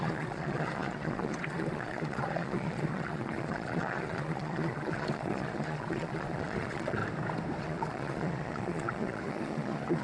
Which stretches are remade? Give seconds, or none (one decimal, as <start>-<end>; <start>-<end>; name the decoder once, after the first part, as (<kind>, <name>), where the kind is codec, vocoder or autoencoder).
0.0-7.0 (vocoder, Vocos); 7.6-10.0